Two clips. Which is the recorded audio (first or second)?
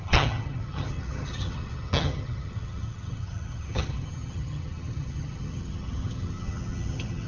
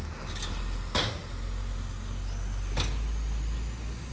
second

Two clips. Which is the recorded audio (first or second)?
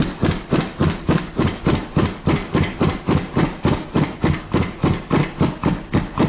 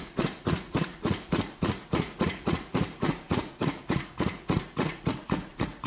first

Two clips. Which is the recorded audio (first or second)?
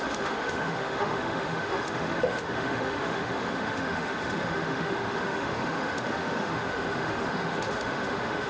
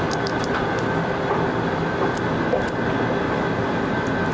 second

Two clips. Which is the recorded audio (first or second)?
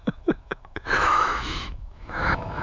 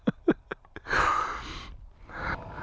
second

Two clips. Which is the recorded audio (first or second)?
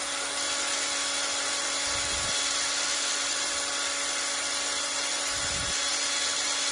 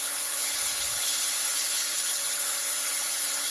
first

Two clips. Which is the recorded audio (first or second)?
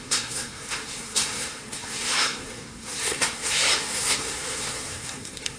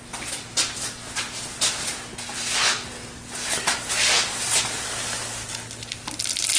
second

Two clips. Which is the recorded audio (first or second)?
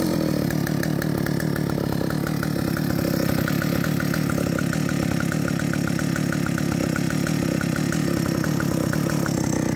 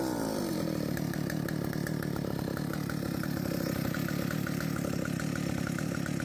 first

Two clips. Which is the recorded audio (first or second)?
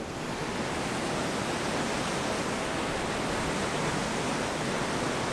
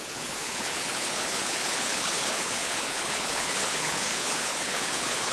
first